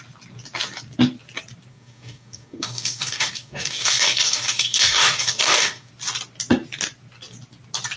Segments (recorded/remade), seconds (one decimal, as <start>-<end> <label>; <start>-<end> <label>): 0.0-1.7 recorded; 1.7-5.9 remade; 5.9-8.0 recorded